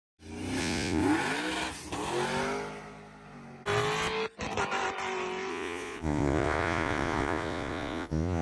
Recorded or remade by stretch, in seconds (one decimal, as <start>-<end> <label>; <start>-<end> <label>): 0.0-0.6 recorded; 0.6-1.0 remade; 1.0-5.5 recorded; 5.5-8.4 remade